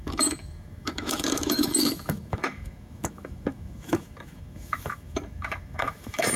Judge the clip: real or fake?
fake